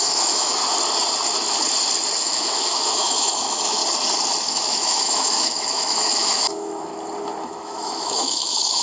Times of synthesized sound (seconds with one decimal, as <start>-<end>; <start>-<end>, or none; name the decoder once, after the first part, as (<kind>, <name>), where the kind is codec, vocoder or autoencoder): 0.0-0.6 (autoencoder, DAC-VAE); 2.2-3.8; 4.4-6.9; 7.4-8.8